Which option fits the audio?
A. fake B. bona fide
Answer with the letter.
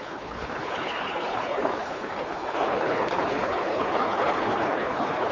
A